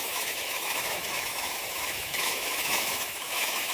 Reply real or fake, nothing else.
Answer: fake